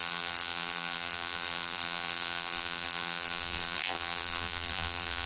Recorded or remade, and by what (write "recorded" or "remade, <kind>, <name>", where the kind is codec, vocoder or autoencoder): remade, vocoder, BigVGAN v2